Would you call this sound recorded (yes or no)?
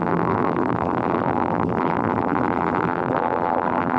no